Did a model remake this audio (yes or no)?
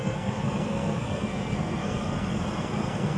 yes